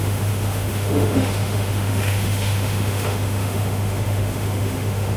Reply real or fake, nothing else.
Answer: fake